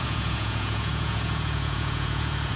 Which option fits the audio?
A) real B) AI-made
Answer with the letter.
B